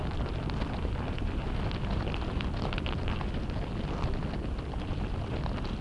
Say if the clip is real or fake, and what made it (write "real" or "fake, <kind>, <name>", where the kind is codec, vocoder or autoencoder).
real